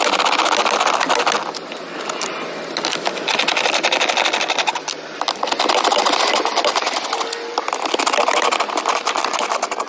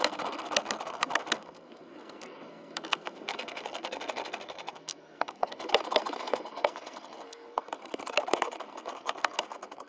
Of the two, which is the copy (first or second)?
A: second